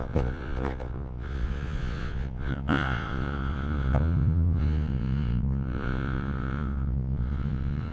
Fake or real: fake